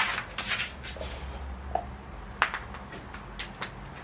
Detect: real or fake real